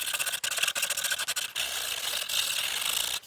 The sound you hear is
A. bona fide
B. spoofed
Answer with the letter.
A